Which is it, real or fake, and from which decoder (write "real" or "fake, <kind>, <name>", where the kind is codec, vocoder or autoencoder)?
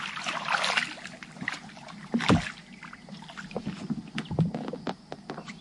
real